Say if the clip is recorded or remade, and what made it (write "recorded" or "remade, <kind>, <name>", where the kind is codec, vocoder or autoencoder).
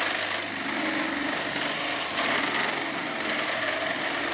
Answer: recorded